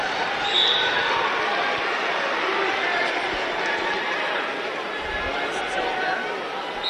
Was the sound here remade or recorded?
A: recorded